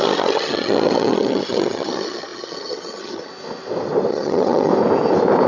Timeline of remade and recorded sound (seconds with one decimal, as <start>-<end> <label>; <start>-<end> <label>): 0.0-3.3 remade; 3.3-4.1 recorded; 4.1-4.7 remade; 4.7-5.5 recorded